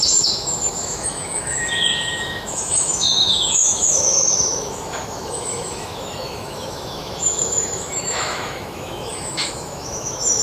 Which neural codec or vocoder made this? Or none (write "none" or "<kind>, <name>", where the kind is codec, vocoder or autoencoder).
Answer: autoencoder, DAC-VAE